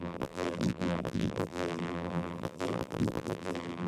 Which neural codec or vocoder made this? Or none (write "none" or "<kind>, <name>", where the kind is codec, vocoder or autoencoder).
vocoder, BigVGAN v2